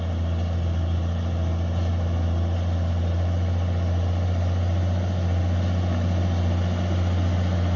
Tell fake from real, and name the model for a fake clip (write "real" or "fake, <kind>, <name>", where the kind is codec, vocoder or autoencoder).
real